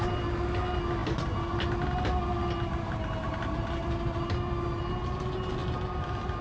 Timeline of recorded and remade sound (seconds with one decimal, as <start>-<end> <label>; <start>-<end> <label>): 0.0-6.4 recorded